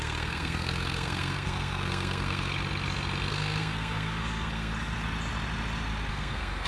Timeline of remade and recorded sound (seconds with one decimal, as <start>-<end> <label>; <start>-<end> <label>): 0.0-2.5 remade; 2.5-3.3 recorded; 3.3-4.7 remade; 4.7-6.1 recorded; 6.1-6.7 remade